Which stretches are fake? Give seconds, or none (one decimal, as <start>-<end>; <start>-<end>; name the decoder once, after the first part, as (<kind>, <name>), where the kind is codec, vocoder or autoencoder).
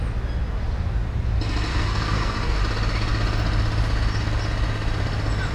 1.7-2.6 (codec, SNAC)